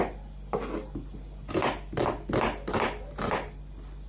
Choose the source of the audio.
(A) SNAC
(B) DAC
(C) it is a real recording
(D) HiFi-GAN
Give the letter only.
C